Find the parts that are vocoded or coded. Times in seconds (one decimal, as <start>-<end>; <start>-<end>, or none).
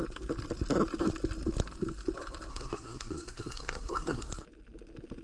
2.5-4.3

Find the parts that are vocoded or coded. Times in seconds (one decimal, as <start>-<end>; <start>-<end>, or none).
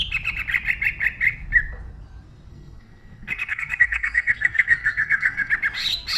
2.5-5.5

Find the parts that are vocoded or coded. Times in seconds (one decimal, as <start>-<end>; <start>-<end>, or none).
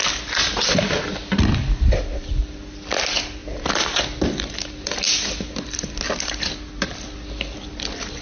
none